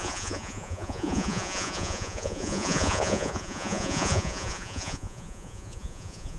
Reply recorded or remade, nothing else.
remade